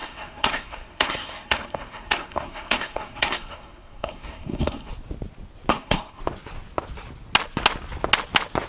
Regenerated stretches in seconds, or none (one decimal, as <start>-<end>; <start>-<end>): 0.0-4.9; 5.7-6.2